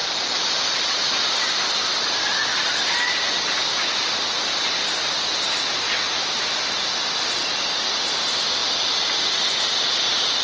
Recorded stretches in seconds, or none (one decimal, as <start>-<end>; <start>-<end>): 2.0-2.5; 3.2-10.4